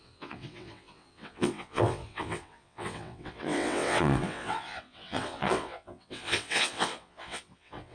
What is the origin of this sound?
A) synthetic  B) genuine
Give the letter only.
A